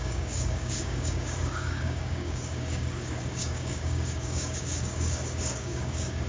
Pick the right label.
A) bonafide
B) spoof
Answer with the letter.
B